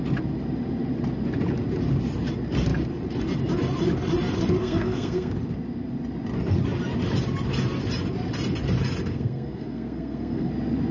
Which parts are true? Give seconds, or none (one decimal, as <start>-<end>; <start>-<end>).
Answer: 0.0-4.6; 5.3-9.1; 10.5-10.9